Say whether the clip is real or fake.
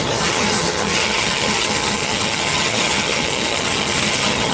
fake